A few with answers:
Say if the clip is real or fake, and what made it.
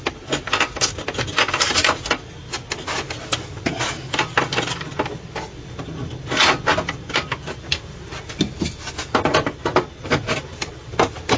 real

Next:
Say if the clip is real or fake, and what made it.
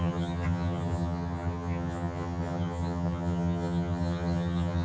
fake, vocoder, HiFi-GAN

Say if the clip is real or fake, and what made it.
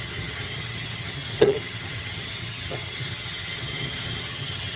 fake, vocoder, HiFi-GAN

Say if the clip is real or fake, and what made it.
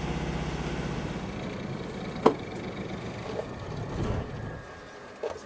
real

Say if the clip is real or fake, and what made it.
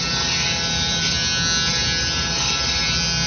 real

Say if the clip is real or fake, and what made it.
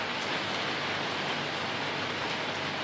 real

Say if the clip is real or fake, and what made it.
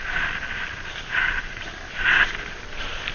real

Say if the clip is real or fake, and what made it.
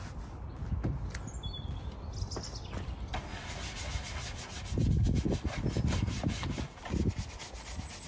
real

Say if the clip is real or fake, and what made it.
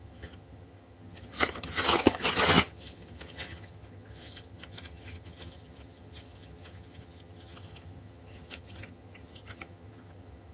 fake, vocoder, HiFi-GAN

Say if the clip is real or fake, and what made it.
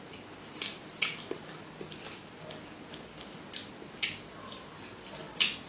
real